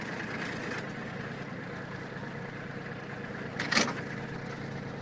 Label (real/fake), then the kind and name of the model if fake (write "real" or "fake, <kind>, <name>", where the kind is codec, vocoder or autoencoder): real